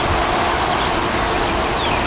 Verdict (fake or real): real